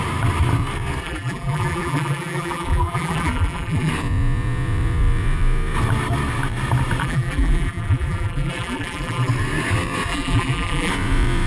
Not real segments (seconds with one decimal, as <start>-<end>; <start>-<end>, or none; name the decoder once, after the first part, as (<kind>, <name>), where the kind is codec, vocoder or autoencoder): 1.0-3.9 (vocoder, BigVGAN v2); 7.0-9.3; 10.1-10.9